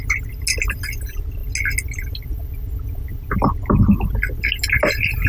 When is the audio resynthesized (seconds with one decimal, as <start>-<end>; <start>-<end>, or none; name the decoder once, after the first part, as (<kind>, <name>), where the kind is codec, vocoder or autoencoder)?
none